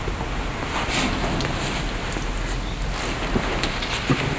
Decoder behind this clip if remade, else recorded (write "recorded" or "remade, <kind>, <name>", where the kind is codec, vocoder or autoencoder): recorded